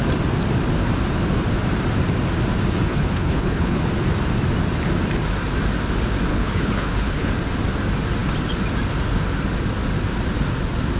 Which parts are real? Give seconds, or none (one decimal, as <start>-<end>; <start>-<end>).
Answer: 0.0-2.9; 3.8-6.3; 7.3-11.0